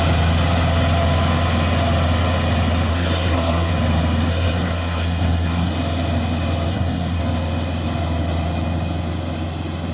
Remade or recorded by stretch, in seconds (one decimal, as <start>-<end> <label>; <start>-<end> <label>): 0.0-2.9 recorded; 2.9-3.7 remade; 3.7-4.3 recorded; 4.3-5.7 remade; 5.7-6.7 recorded; 6.7-7.2 remade; 7.2-9.9 recorded